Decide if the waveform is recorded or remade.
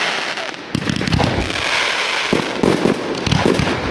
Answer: recorded